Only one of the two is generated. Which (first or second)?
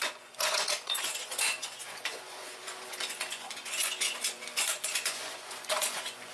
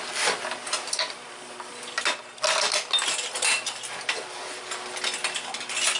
first